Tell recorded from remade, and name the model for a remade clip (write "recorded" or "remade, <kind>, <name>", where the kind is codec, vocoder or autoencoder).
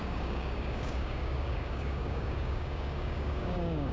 remade, codec, DAC